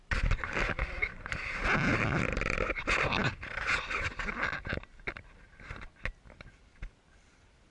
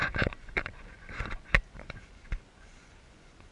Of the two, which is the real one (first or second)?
first